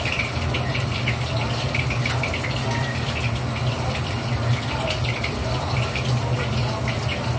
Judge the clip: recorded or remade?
recorded